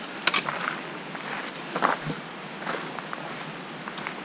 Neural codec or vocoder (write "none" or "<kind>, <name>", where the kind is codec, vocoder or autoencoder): none